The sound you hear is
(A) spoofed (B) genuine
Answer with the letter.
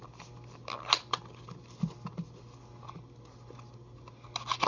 B